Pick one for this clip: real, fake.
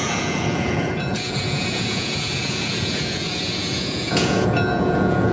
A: fake